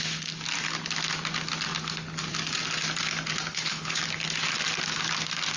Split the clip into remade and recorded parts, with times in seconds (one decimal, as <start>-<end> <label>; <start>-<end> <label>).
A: 0.0-3.5 recorded; 3.5-4.0 remade; 4.0-5.6 recorded